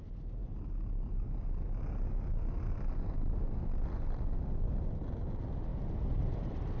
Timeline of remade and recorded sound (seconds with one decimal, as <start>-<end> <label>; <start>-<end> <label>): 0.0-6.8 recorded